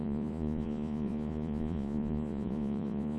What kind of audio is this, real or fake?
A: fake